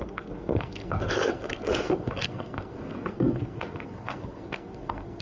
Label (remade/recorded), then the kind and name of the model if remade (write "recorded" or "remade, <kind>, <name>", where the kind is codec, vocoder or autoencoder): remade, codec, SNAC